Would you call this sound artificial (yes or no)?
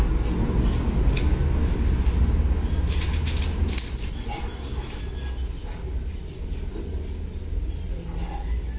no